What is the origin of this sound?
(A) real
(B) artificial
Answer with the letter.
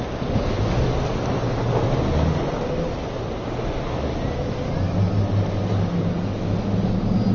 A